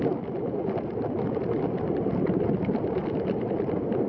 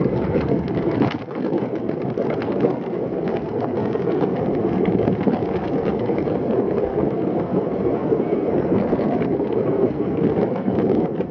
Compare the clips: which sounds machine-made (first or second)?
second